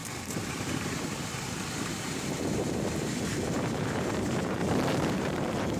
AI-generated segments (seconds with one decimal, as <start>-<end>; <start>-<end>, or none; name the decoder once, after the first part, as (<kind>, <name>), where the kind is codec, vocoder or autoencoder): 0.0-4.6 (vocoder, BigVGAN v2); 5.1-5.8